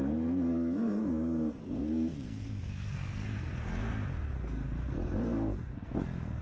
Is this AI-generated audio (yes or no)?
yes